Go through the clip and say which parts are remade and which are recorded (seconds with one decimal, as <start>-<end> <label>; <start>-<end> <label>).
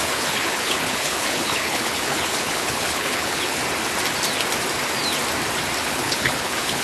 0.0-3.6 remade; 3.6-5.8 recorded; 5.8-6.8 remade